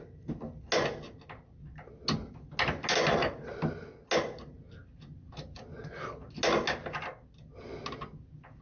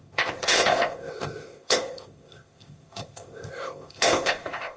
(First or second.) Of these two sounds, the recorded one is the first